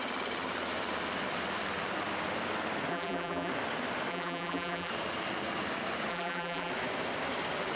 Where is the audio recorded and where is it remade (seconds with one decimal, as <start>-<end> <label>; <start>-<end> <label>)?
0.0-2.9 recorded; 2.9-3.5 remade; 3.5-4.1 recorded; 4.1-4.9 remade; 4.9-6.1 recorded; 6.1-6.7 remade; 6.7-7.8 recorded

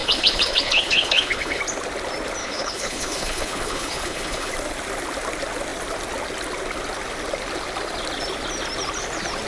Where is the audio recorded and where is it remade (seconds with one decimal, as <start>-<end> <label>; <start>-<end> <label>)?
0.0-1.6 remade; 1.6-2.4 recorded; 2.4-4.5 remade; 4.5-9.5 recorded

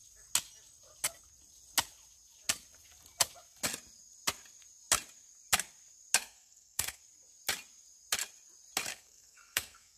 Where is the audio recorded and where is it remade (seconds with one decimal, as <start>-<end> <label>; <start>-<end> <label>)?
0.0-6.2 recorded; 6.2-7.0 remade; 7.0-8.9 recorded; 8.9-10.0 remade

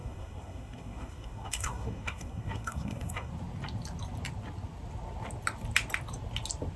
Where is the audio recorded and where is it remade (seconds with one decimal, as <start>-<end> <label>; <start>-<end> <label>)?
0.0-3.3 remade; 3.3-6.8 recorded

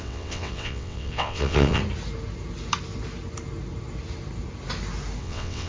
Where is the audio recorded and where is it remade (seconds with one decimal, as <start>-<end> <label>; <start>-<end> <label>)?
0.0-1.8 remade; 1.8-5.2 recorded; 5.2-5.7 remade